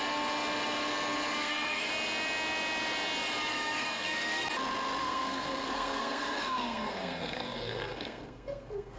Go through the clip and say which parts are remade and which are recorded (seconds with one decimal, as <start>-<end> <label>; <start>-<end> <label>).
0.0-1.4 recorded; 1.4-1.9 remade; 1.9-3.5 recorded; 3.5-4.5 remade; 4.5-5.0 recorded; 5.0-9.0 remade

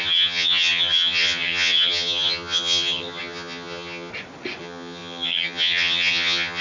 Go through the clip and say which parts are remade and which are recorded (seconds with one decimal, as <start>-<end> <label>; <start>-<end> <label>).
0.0-4.1 remade; 4.1-4.6 recorded; 4.6-6.6 remade

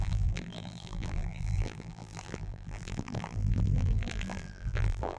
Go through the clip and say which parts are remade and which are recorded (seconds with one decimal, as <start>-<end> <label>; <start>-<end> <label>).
0.0-5.2 remade

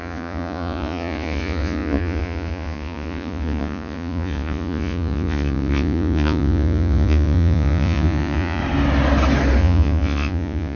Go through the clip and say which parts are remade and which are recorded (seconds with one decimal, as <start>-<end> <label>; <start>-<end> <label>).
0.0-8.6 remade; 8.6-9.6 recorded; 9.6-10.8 remade

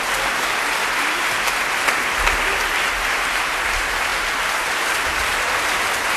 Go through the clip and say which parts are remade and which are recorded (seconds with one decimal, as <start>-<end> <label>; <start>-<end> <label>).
0.0-6.2 recorded